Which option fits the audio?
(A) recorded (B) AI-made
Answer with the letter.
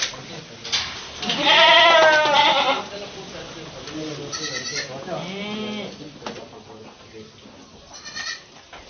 A